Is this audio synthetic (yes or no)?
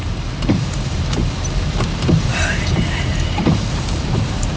yes